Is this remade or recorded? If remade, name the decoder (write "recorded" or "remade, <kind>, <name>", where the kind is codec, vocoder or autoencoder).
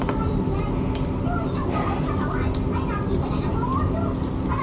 recorded